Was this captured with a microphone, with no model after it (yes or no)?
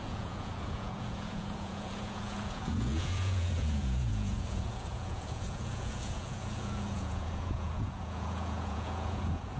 no